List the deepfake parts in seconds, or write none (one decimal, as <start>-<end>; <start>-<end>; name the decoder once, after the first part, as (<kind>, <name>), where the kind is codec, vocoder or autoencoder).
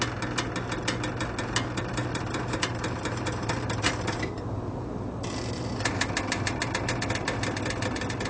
1.9-4.2 (vocoder, BigVGAN v2)